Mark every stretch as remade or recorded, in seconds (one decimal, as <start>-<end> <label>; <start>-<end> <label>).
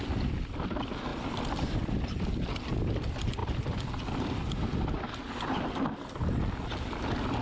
0.0-7.4 recorded